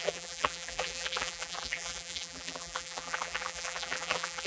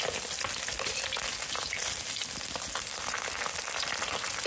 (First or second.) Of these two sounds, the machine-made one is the first